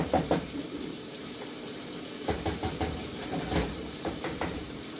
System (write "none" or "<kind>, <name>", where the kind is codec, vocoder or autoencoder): vocoder, BigVGAN v2